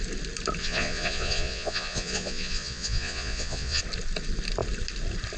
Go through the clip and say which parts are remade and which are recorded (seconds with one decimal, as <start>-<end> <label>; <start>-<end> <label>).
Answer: 0.0-0.6 recorded; 0.6-3.8 remade; 3.8-5.4 recorded